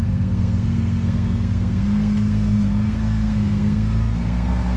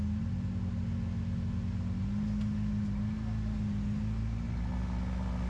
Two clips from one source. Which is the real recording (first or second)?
second